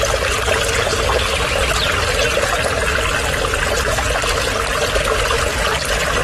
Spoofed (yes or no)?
no